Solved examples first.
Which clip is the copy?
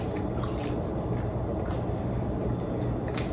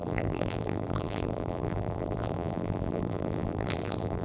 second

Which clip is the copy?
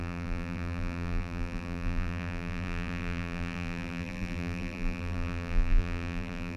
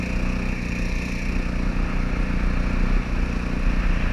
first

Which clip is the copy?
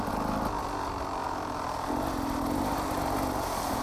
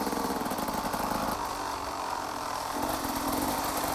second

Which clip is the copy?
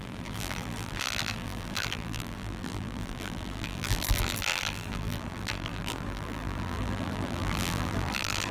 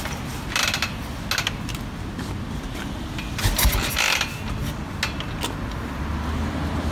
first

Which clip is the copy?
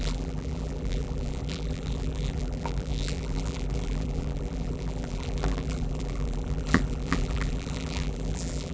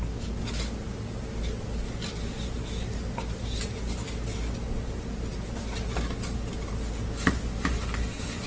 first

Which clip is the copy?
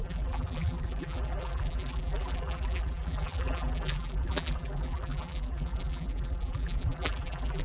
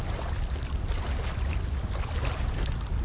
first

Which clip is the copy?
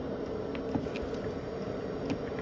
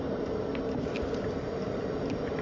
second